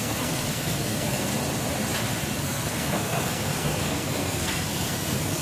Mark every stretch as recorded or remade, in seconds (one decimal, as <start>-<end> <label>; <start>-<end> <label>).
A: 0.0-1.3 remade; 1.3-2.4 recorded; 2.4-5.4 remade